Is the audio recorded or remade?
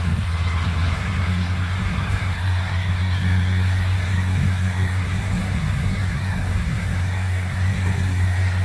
remade